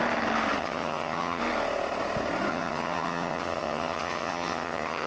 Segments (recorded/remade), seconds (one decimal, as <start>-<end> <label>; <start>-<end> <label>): 0.0-0.6 recorded; 0.6-1.4 remade; 1.4-2.5 recorded; 2.5-5.1 remade